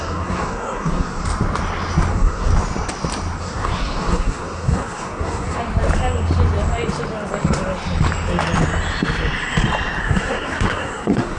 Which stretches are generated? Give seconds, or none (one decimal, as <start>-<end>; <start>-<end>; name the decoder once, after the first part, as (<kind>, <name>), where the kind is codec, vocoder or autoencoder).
0.0-1.2 (codec, SNAC); 2.1-2.5; 3.4-5.6; 10.0-11.4